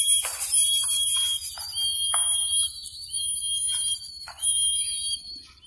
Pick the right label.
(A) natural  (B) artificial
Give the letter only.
A